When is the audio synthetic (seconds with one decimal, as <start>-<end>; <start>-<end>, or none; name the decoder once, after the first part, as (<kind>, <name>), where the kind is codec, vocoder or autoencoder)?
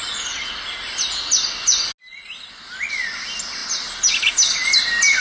none